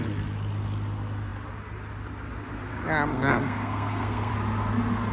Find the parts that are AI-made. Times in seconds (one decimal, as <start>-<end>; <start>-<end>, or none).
3.1-4.3

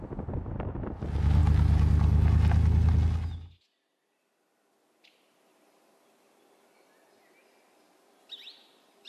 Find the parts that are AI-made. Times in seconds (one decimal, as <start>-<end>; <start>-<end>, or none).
none

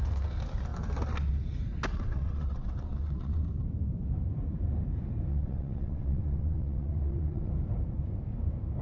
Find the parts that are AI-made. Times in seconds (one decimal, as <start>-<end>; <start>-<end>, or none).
1.9-3.4; 5.3-7.5

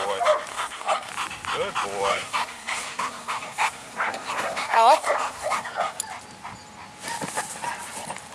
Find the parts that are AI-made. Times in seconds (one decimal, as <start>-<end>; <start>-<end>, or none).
0.5-1.1; 2.1-6.0

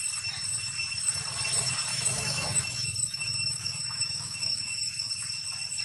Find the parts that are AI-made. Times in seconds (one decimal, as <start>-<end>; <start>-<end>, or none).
1.9-5.1

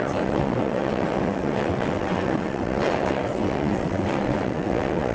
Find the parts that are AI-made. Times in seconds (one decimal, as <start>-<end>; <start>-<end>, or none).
0.0-5.1